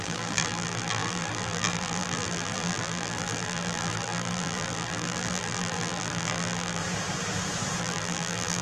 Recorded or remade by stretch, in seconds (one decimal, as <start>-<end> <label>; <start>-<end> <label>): 0.0-6.8 remade; 6.8-7.8 recorded; 7.8-8.6 remade